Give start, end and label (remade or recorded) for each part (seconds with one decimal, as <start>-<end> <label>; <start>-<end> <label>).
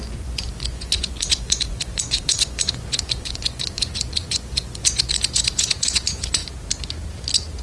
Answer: 0.0-6.4 remade; 6.4-7.6 recorded